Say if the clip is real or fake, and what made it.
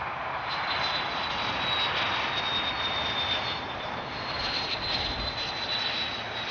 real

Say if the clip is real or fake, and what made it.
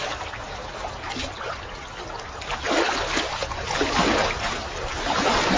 real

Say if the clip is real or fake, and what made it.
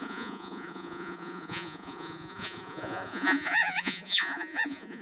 fake, vocoder, Vocos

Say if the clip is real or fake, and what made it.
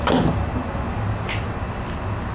real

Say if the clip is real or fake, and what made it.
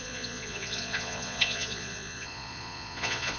fake, vocoder, Vocos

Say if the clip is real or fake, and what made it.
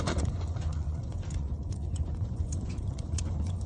fake, vocoder, Vocos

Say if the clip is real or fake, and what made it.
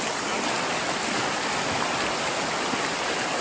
real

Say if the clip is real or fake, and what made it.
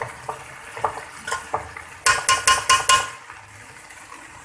real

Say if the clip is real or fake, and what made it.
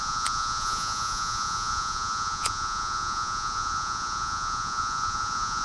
fake, vocoder, Vocos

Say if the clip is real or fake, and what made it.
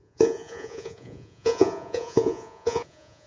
fake, vocoder, Vocos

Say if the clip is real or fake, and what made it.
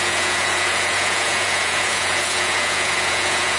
fake, vocoder, Vocos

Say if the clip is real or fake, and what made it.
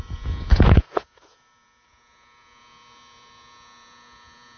fake, vocoder, Vocos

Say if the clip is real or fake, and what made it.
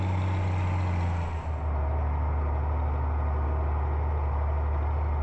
real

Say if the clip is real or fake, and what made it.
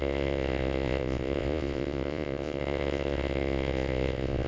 fake, vocoder, Vocos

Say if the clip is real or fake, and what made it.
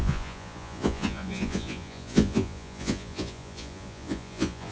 fake, vocoder, Vocos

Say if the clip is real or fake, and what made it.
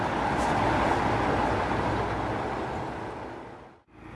real